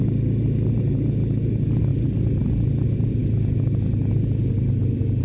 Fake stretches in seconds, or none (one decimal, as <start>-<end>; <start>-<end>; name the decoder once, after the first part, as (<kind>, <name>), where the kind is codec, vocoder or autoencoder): 1.9-2.4 (vocoder, BigVGAN v2)